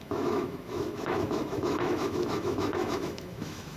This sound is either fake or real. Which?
fake